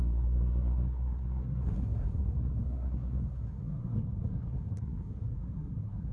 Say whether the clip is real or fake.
fake